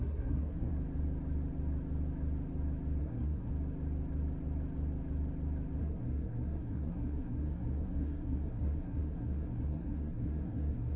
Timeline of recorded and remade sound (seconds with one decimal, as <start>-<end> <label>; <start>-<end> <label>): 0.0-0.7 remade; 0.7-3.0 recorded; 3.0-3.5 remade; 3.5-5.8 recorded; 5.8-11.0 remade